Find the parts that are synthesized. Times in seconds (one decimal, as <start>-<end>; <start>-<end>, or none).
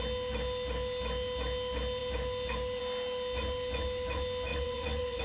4.5-5.2